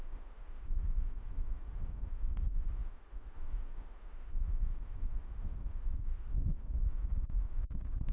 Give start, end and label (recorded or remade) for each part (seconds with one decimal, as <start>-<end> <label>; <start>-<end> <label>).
0.0-8.1 remade